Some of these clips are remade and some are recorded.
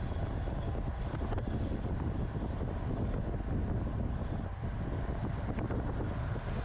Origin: recorded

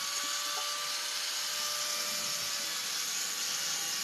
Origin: recorded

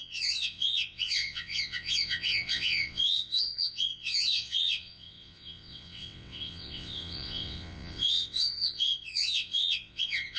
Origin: remade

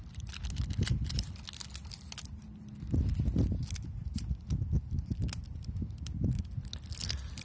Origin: recorded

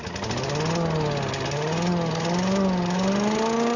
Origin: recorded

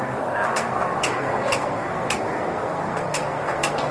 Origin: remade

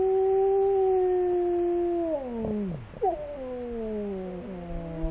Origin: recorded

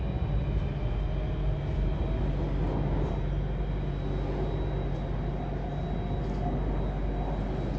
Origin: recorded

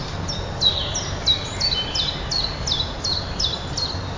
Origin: recorded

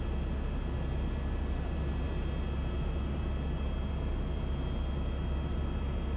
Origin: recorded